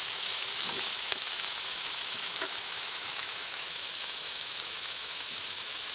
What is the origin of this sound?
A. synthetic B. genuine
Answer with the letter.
A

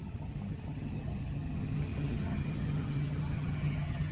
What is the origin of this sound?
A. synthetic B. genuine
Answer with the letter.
A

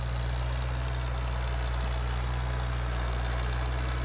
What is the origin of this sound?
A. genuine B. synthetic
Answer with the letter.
A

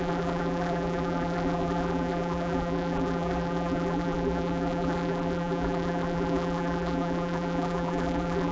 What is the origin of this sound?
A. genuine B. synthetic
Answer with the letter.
B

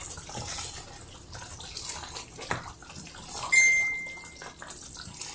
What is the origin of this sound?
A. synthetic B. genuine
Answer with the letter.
B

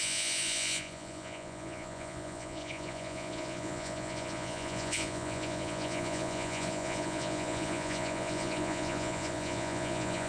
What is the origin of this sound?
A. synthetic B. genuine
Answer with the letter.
A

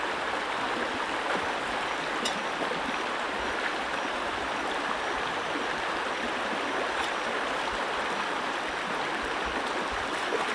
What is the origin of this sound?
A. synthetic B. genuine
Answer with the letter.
B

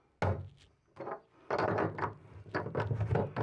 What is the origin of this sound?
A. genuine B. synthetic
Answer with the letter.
A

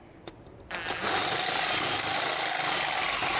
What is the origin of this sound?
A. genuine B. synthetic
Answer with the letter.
A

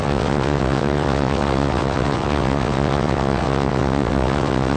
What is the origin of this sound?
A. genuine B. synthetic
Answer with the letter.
B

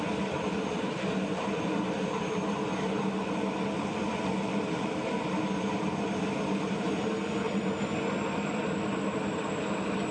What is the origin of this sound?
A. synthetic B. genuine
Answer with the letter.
B